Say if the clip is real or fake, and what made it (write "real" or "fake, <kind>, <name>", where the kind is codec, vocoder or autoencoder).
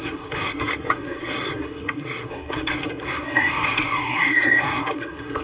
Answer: fake, codec, SNAC